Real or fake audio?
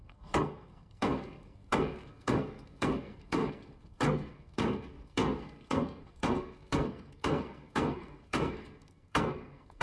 fake